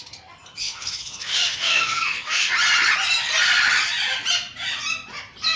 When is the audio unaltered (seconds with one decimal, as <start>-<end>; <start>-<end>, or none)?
0.0-0.6; 2.5-5.6